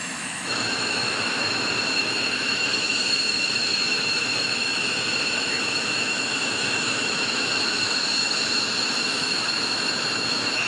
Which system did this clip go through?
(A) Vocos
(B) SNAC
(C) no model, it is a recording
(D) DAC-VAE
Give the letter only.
D